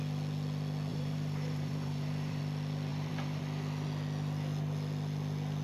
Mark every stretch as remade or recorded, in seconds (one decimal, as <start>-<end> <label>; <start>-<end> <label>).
0.0-0.9 recorded; 0.9-2.4 remade; 2.4-2.9 recorded; 2.9-3.4 remade; 3.4-5.6 recorded